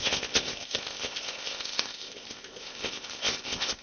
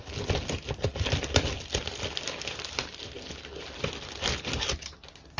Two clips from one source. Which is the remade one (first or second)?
first